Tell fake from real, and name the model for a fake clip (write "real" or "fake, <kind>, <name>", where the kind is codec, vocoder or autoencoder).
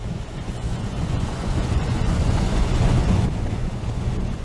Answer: fake, vocoder, Vocos